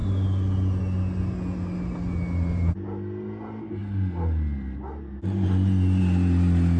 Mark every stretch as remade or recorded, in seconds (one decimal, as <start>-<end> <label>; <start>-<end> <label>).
0.0-6.8 recorded